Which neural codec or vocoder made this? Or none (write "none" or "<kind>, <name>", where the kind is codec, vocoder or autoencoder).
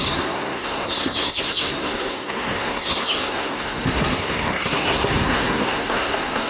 codec, SNAC